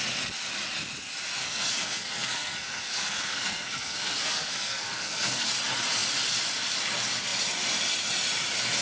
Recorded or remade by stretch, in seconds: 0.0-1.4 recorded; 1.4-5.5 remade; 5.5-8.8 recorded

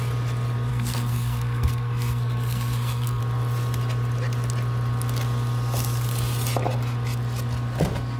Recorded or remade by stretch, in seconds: 0.0-0.7 recorded; 0.7-3.2 remade; 3.2-8.2 recorded

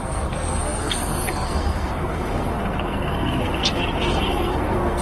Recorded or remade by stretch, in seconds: 0.0-5.0 remade

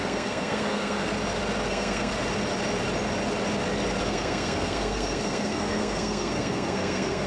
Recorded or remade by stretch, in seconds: 0.0-1.1 remade; 1.1-1.7 recorded; 1.7-2.1 remade; 2.1-4.0 recorded; 4.0-7.3 remade

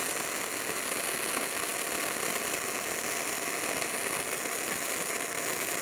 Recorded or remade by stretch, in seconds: 0.0-5.8 recorded

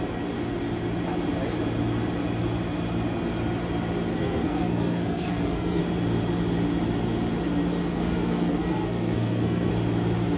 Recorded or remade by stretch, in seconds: 0.0-4.1 recorded; 4.1-5.8 remade; 5.8-7.8 recorded; 7.8-9.7 remade; 9.7-10.4 recorded